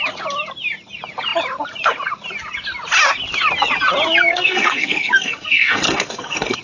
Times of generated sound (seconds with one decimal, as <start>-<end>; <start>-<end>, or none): 4.3-6.6